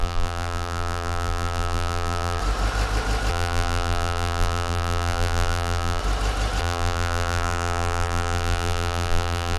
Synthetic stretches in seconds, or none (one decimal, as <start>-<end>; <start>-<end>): 0.0-2.4; 3.3-6.0; 6.6-9.6